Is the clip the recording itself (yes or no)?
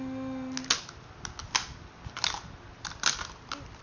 yes